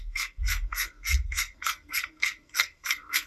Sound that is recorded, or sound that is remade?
remade